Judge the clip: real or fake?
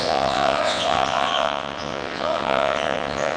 fake